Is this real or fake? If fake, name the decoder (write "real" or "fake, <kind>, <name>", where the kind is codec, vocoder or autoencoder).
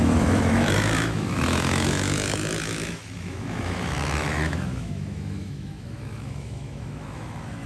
fake, autoencoder, DAC-VAE